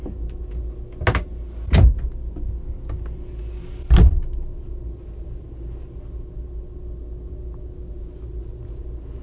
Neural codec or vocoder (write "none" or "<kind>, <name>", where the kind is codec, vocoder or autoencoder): none